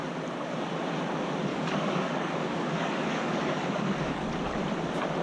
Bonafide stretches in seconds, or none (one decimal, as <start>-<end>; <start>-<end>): 0.0-1.5; 4.3-5.2